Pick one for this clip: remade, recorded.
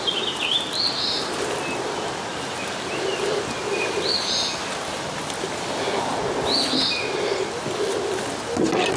recorded